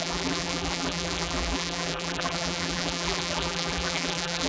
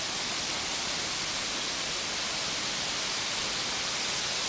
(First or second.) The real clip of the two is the second